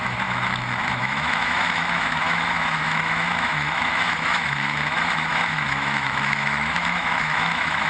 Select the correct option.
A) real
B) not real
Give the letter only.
B